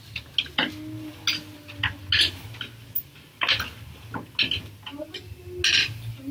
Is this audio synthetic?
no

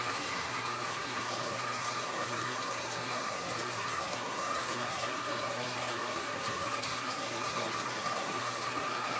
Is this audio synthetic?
yes